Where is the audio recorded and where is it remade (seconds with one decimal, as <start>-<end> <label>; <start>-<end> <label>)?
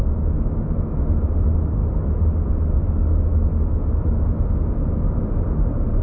0.0-6.0 recorded